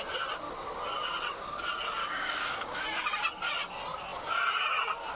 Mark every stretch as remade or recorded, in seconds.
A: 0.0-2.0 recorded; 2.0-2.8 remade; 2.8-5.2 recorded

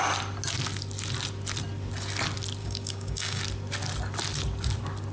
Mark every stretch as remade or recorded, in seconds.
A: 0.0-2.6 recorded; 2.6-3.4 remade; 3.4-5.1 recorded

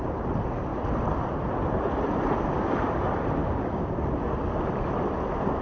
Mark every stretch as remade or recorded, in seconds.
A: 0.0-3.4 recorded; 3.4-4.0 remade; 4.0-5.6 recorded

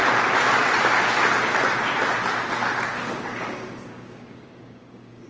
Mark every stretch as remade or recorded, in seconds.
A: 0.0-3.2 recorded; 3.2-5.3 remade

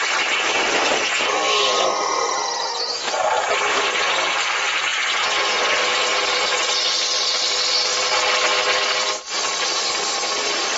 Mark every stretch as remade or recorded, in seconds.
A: 0.0-10.8 recorded

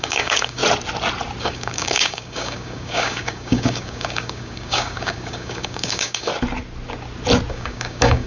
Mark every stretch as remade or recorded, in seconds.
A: 0.0-0.6 remade; 0.6-1.4 recorded; 1.4-6.3 remade; 6.3-7.5 recorded; 7.5-8.3 remade

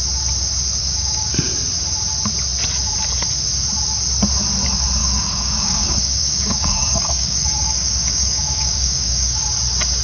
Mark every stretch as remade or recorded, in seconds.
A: 0.0-0.8 recorded; 0.8-1.3 remade; 1.3-5.0 recorded; 5.0-9.5 remade; 9.5-10.0 recorded

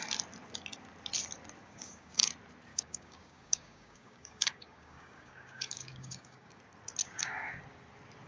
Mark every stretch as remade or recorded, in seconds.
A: 0.0-1.6 recorded; 1.6-2.3 remade; 2.3-2.7 recorded; 2.7-6.6 remade; 6.6-7.0 recorded; 7.0-7.6 remade; 7.6-8.3 recorded